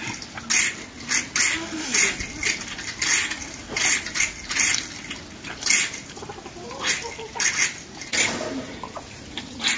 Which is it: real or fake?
real